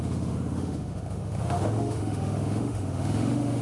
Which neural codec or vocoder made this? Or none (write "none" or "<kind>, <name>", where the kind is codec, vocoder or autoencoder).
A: autoencoder, DAC-VAE